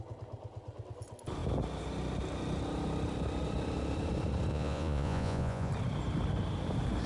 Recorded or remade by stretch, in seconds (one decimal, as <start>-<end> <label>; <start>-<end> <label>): 0.0-4.5 recorded; 4.5-5.7 remade; 5.7-7.1 recorded